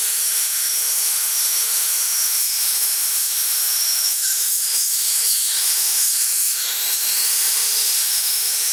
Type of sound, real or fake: fake